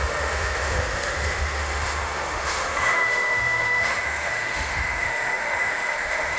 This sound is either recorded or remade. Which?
remade